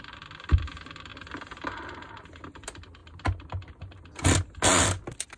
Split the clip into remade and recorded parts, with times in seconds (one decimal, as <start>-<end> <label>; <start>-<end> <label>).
0.0-5.4 recorded